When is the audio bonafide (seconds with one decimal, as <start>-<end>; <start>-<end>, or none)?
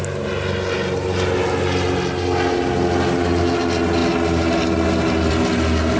0.0-6.0